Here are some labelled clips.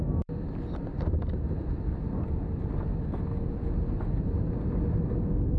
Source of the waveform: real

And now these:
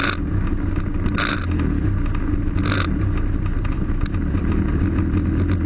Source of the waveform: real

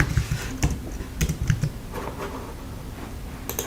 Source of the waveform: real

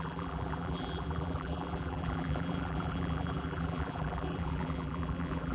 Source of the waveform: fake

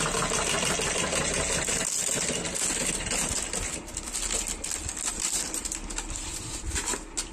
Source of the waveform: real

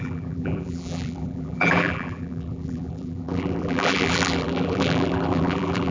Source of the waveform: fake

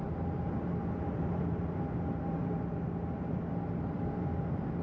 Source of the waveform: fake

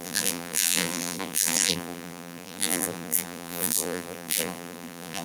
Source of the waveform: fake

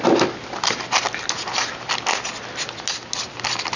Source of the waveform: real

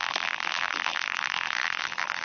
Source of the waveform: fake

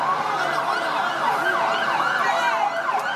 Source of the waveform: real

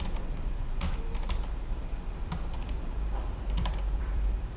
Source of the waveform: fake